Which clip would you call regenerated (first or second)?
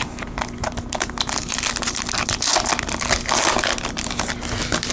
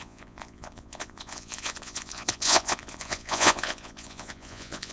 second